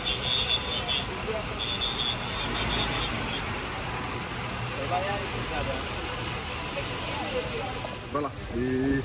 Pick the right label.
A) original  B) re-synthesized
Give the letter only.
A